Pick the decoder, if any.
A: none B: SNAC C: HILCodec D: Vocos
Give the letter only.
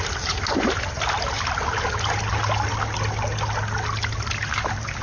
A